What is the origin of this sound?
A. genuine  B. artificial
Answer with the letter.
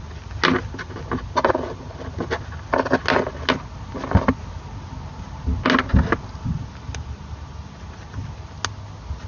A